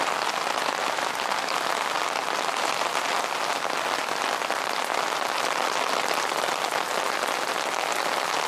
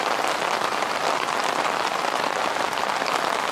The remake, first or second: second